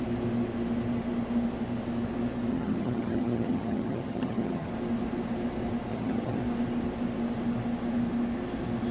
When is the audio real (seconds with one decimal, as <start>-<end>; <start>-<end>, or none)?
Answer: 0.0-2.5; 4.7-5.9; 6.4-8.9